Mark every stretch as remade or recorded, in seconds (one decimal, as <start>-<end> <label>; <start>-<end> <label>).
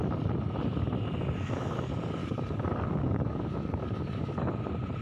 0.0-2.2 recorded; 2.2-4.5 remade; 4.5-5.0 recorded